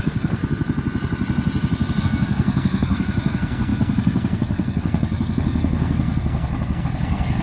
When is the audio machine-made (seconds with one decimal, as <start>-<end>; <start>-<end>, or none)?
0.0-0.4; 2.0-7.4